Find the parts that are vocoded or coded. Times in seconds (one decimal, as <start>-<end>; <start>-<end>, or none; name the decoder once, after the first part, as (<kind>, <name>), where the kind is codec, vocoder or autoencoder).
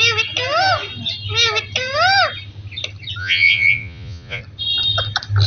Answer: 3.2-4.4 (vocoder, Vocos)